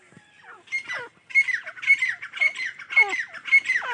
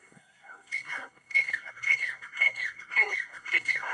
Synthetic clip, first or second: second